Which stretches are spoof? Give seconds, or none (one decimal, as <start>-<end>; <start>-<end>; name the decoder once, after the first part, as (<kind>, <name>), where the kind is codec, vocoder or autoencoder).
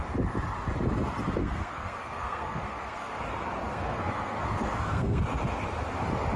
1.4-3.2 (codec, SNAC); 3.7-5.2